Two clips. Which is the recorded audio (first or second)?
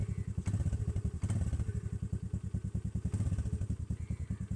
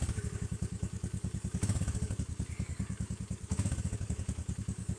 first